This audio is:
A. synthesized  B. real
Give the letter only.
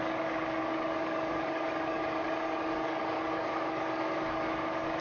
A